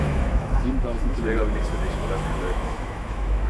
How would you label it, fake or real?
fake